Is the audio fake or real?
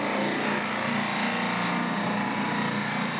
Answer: real